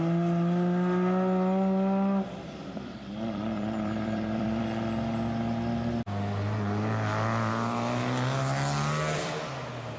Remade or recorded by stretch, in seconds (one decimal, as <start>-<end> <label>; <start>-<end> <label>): 0.0-2.6 recorded; 2.6-4.6 remade; 4.6-10.0 recorded